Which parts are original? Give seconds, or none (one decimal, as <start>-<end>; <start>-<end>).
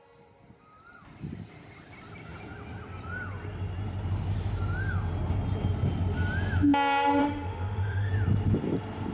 0.0-7.2; 8.1-9.1